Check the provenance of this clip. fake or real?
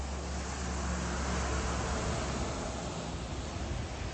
real